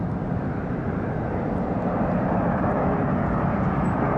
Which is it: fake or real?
fake